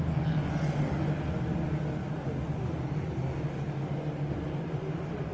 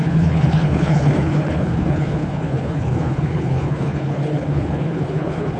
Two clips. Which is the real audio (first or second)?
first